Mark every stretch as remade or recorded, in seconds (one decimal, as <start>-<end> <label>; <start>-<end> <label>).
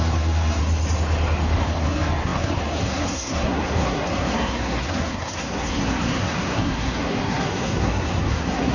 0.0-0.6 remade; 0.6-1.6 recorded; 1.6-8.7 remade